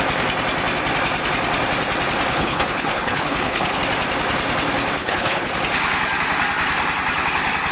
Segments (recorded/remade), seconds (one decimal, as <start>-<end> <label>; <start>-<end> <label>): 0.0-2.3 recorded; 2.3-3.8 remade; 3.8-5.0 recorded; 5.0-5.5 remade; 5.5-7.7 recorded

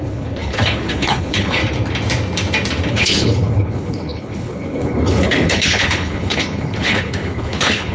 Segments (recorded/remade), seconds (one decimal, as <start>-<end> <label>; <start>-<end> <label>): 0.0-1.6 remade; 1.6-2.9 recorded; 2.9-7.9 remade

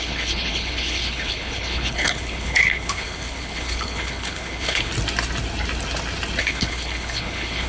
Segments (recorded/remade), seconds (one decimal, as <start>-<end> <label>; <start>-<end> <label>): 0.0-4.9 remade; 4.9-6.4 recorded; 6.4-7.7 remade